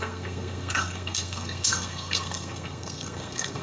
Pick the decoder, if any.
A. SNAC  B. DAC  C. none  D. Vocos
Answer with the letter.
A